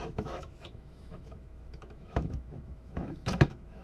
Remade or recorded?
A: remade